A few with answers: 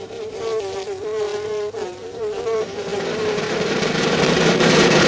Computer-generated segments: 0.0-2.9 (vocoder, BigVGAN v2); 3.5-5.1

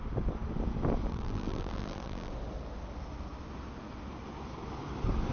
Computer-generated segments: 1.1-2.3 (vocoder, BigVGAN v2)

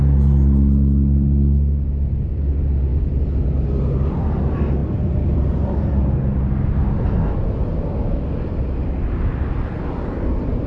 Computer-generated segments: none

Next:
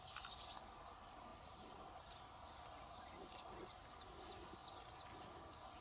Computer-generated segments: 1.3-2.2 (vocoder, BigVGAN v2); 2.8-3.8

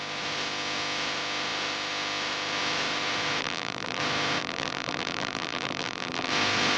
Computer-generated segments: 3.4-4.0 (vocoder, BigVGAN v2); 4.4-6.3

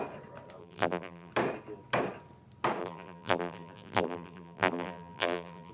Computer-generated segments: 0.6-1.3 (vocoder, BigVGAN v2); 2.8-5.7

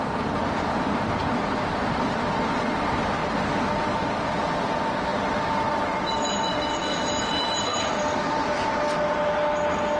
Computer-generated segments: none